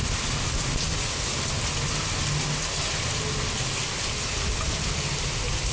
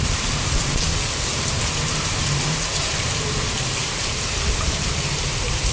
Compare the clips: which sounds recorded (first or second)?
first